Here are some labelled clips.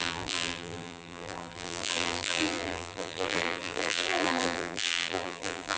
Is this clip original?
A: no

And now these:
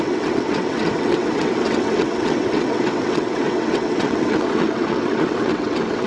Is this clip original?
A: no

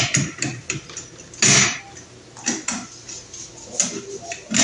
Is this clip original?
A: yes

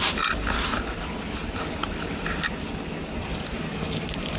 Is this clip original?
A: yes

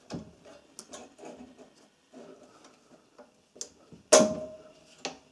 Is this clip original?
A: yes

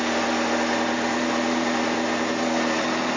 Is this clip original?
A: yes